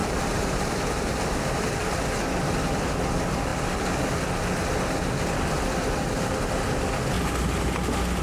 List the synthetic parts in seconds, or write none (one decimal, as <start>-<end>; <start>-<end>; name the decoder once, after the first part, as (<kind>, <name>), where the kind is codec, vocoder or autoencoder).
0.0-1.2 (vocoder, BigVGAN v2)